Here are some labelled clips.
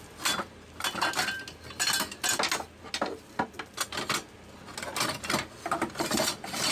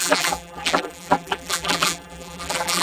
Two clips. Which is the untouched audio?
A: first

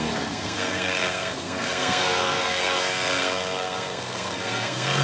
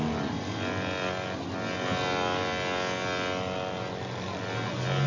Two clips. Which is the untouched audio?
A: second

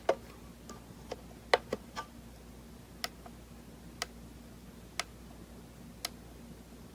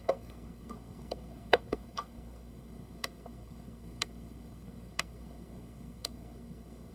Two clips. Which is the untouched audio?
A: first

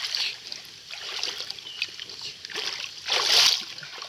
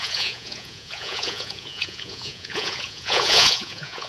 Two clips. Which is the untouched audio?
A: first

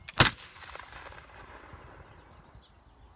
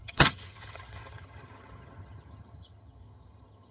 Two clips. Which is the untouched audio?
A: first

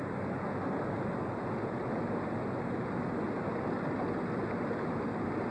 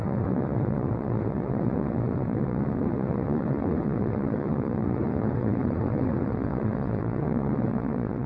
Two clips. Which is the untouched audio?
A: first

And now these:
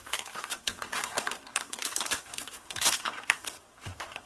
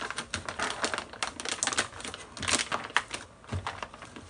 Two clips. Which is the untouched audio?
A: second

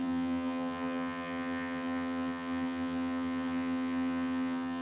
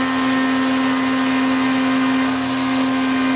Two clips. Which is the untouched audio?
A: second